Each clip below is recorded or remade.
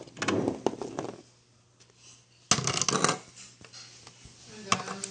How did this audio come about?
recorded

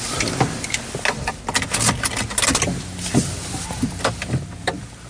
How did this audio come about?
recorded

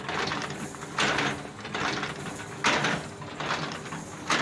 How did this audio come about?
recorded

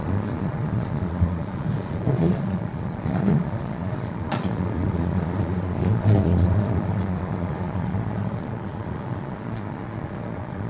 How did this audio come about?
remade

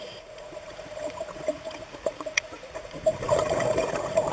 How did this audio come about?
remade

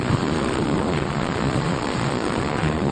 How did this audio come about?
remade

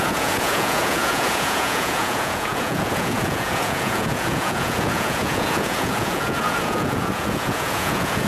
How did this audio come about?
remade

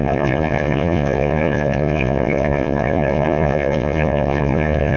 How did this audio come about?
remade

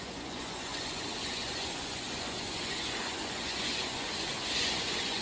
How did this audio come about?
remade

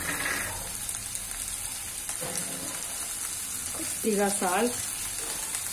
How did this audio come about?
recorded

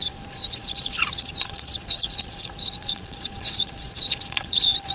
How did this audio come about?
remade